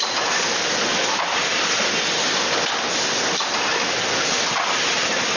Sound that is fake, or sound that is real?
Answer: real